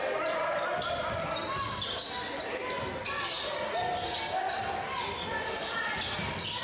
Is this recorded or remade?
recorded